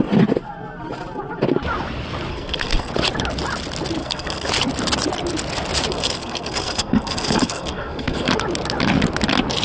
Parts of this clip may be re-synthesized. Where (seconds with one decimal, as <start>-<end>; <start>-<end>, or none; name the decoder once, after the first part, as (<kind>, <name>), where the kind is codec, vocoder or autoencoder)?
2.3-2.9 (codec, SNAC); 4.0-4.5; 5.9-8.3